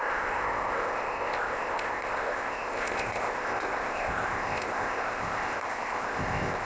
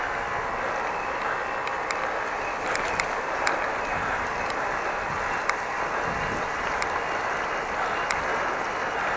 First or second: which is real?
second